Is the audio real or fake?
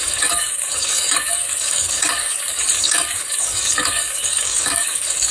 fake